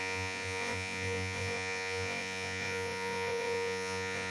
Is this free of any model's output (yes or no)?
no